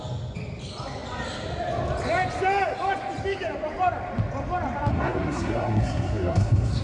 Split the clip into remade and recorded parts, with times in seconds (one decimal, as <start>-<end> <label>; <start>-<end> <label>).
0.0-4.9 recorded; 4.9-6.8 remade